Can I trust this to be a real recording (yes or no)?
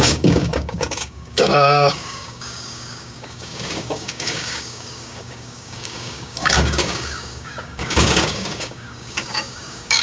no